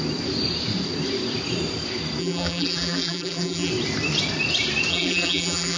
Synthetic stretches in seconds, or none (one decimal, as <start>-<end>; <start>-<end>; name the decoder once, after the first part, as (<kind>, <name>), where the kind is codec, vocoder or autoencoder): 2.2-3.7 (vocoder, BigVGAN v2); 4.9-5.8